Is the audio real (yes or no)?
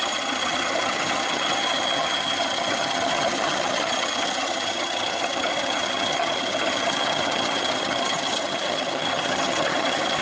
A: no